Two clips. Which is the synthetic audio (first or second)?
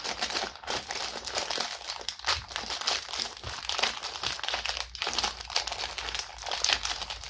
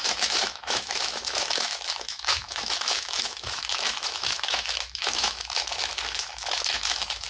second